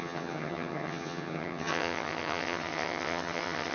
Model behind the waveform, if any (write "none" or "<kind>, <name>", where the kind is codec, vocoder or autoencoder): vocoder, HiFi-GAN